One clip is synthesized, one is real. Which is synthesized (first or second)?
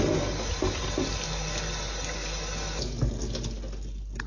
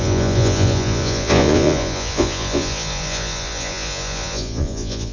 second